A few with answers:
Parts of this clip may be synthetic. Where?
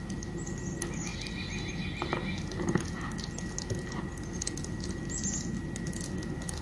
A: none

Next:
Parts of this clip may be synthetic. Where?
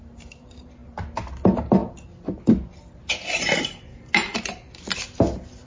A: none